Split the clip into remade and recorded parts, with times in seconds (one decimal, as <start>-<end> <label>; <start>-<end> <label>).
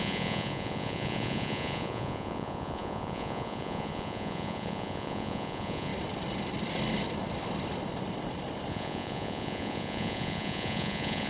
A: 0.0-5.9 remade; 5.9-8.7 recorded; 8.7-11.3 remade